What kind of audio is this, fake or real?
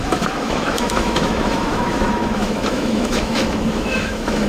fake